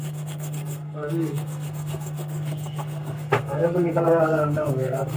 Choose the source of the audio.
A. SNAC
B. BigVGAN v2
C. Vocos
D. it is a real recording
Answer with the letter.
A